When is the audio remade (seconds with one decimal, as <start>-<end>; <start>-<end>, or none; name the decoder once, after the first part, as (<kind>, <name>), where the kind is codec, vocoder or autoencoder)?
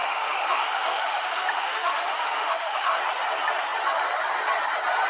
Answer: 0.0-3.0 (autoencoder, DAC-VAE)